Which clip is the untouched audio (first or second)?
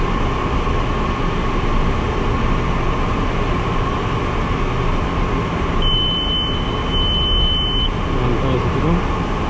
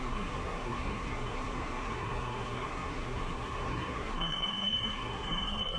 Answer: first